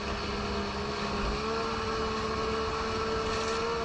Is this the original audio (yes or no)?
yes